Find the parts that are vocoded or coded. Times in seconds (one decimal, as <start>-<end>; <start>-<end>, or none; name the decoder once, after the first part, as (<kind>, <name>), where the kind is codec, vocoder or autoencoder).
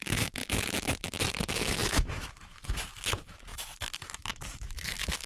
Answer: 0.0-5.3 (autoencoder, DAC-VAE)